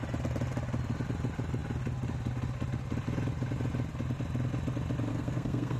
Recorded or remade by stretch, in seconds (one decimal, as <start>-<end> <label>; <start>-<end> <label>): 0.0-5.1 recorded; 5.1-5.8 remade